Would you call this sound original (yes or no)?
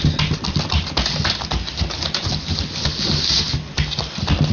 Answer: yes